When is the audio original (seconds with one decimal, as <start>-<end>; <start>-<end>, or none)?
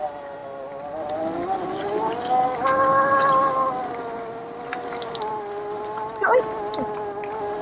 0.0-7.6